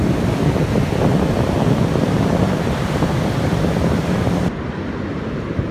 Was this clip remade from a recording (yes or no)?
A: yes